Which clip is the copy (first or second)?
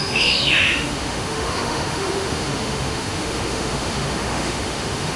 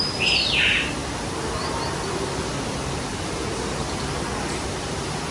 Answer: first